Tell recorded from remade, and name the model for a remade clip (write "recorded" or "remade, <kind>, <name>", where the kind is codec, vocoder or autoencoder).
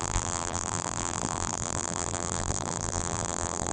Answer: remade, vocoder, BigVGAN v2